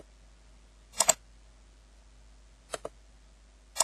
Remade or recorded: recorded